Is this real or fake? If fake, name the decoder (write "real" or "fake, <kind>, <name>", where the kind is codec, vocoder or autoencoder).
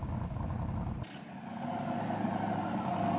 real